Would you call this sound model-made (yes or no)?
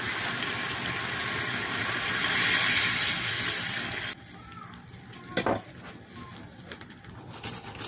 no